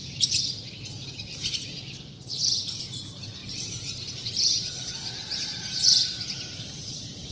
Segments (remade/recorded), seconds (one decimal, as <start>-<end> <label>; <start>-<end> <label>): 0.0-3.4 recorded; 3.4-7.3 remade